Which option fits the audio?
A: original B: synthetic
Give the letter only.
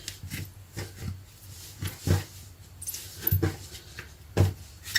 A